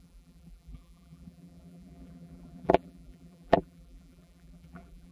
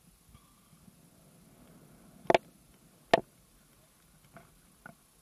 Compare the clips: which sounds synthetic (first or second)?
first